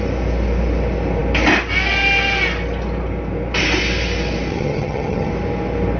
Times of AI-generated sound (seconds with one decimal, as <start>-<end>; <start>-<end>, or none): 4.5-5.3